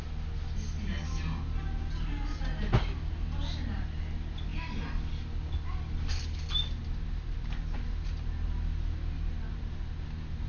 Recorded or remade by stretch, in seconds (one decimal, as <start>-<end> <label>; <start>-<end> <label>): 0.0-10.5 recorded